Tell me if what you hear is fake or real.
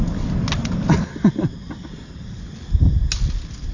real